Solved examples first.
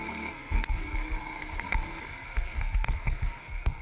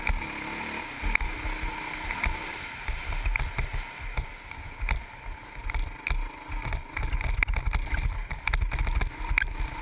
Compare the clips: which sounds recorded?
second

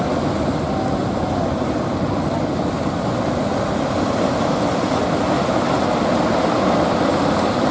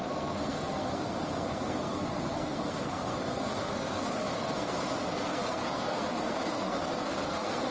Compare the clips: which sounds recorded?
first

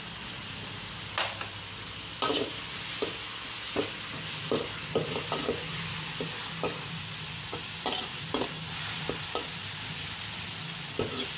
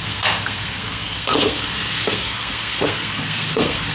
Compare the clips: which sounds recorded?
first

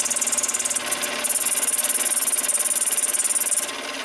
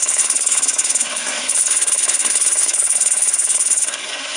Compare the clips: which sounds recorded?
first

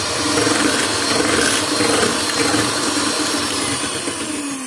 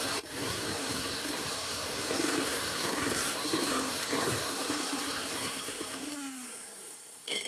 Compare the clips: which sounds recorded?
first